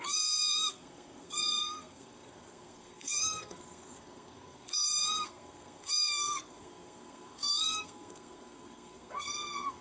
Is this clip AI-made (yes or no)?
yes